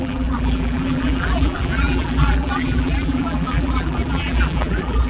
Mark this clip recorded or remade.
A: remade